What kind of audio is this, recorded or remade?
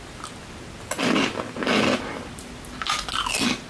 recorded